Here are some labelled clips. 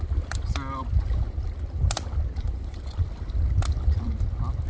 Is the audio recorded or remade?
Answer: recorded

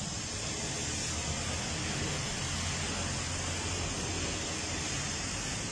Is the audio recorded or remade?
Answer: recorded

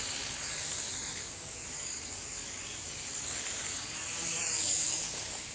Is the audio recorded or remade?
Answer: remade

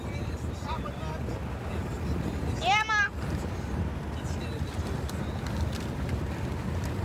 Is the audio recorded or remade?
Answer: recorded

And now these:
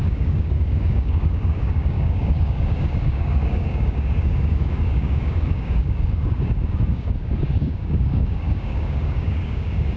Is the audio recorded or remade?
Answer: remade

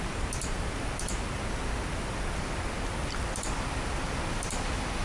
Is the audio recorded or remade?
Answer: recorded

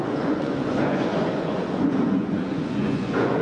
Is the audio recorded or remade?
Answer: remade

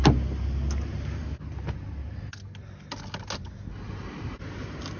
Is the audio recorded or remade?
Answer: recorded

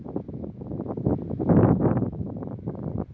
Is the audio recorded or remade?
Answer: recorded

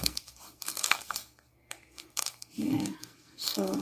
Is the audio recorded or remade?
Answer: remade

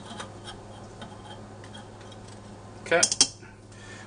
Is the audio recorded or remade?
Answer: recorded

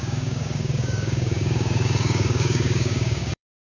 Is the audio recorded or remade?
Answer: remade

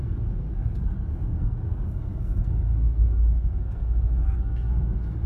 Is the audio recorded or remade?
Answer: remade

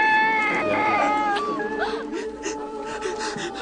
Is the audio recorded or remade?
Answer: recorded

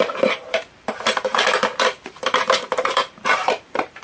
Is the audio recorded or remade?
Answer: remade